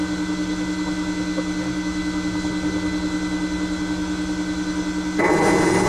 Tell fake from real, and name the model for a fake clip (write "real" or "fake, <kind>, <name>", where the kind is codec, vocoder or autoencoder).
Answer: real